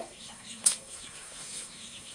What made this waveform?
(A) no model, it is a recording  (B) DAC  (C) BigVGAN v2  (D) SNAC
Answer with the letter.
D